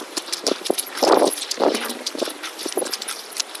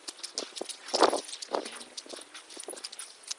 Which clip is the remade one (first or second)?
first